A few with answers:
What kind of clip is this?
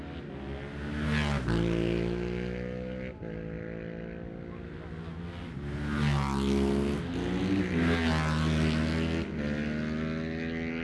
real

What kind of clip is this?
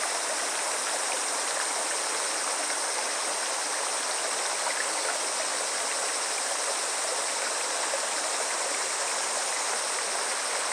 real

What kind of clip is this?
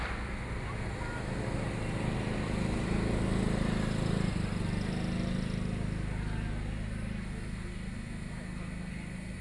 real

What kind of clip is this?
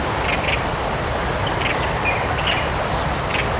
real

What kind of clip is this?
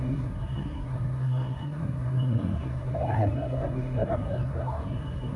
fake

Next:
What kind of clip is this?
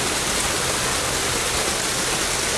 real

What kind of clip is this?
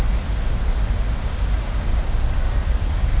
real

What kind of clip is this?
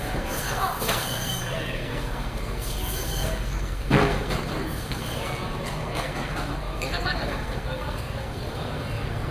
fake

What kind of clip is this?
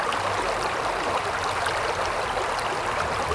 real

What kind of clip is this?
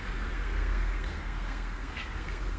fake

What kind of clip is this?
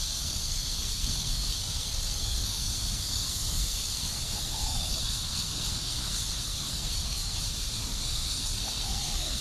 fake